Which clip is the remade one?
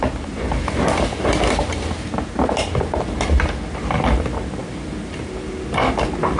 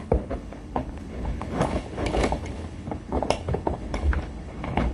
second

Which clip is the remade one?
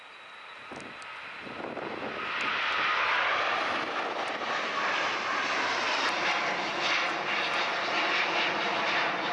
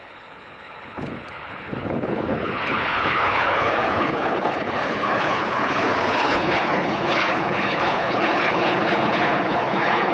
second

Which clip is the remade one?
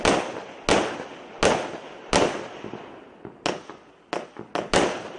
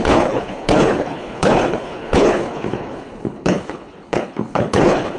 second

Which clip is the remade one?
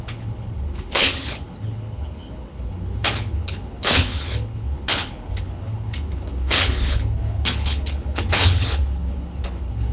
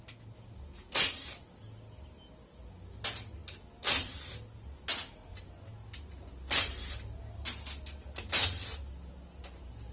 first